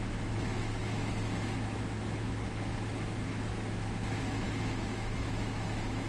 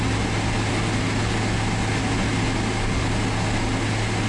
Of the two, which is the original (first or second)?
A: second